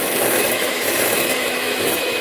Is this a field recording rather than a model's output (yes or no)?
no